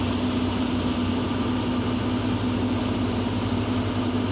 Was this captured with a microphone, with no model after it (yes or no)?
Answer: yes